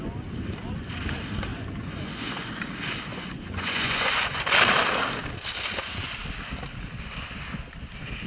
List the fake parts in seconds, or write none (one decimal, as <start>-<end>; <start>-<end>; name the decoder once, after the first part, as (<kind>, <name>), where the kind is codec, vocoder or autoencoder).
1.5-2.5 (vocoder, Vocos); 3.1-4.4

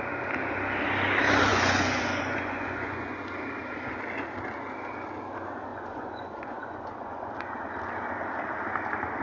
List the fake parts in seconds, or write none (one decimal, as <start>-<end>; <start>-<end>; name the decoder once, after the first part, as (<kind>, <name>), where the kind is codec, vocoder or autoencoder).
1.5-3.2 (vocoder, Vocos); 5.7-7.3

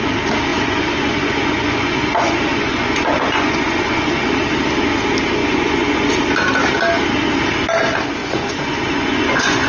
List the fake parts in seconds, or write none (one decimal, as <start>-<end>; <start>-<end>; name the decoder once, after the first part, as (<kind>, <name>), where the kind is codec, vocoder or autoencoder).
0.5-4.3 (vocoder, Vocos); 5.4-6.1; 8.2-9.7

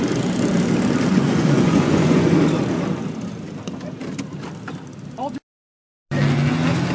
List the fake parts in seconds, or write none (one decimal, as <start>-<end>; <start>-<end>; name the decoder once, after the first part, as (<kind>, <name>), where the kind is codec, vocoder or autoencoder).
1.1-2.4 (vocoder, Vocos)